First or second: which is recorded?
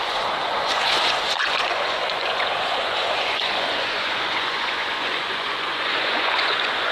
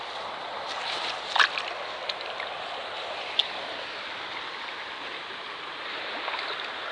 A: second